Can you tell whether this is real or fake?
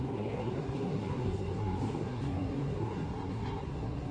fake